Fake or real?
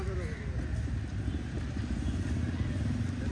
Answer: real